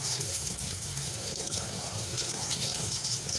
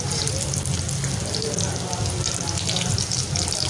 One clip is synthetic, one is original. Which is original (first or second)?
second